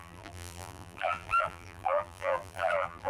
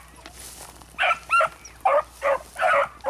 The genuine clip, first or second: second